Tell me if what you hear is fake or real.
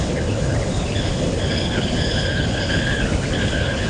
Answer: fake